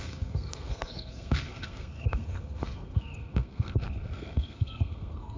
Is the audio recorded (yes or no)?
no